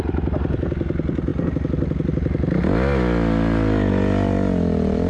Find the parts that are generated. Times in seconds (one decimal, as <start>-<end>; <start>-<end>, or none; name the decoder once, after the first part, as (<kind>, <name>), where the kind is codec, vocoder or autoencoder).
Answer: none